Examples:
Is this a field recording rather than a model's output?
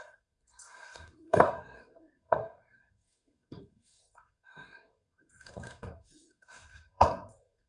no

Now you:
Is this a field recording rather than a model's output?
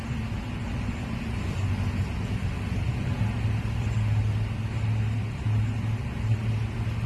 yes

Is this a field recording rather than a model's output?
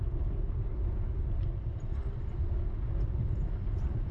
yes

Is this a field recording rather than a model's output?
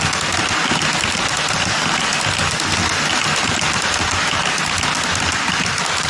yes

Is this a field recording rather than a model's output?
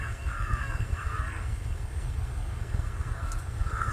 no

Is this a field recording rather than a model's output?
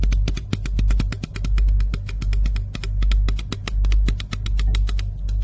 yes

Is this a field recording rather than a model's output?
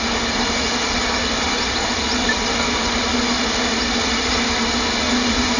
yes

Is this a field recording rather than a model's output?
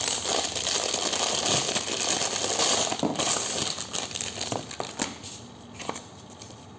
yes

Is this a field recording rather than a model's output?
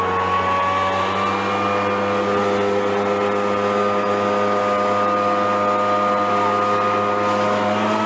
yes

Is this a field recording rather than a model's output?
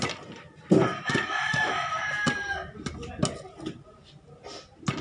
yes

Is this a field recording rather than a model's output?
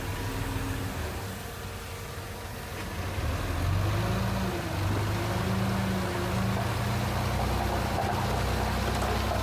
yes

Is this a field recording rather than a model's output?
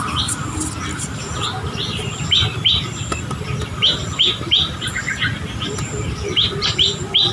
yes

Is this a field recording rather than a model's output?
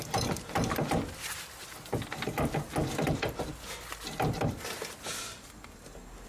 yes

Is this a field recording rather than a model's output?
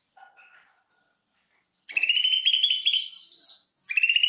yes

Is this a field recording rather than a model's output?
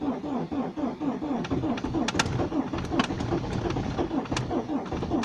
yes